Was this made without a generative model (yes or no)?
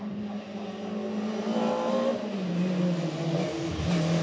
yes